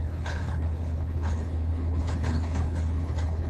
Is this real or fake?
fake